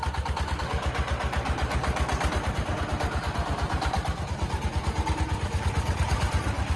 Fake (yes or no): no